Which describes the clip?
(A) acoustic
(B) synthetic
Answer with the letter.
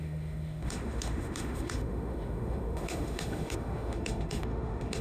B